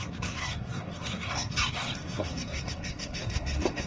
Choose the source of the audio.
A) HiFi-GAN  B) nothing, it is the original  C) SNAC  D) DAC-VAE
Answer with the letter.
C